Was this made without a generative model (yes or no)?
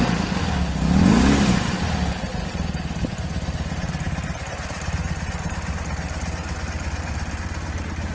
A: yes